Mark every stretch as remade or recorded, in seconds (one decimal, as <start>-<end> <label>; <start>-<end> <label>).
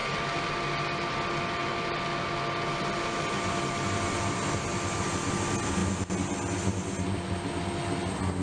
0.0-8.4 recorded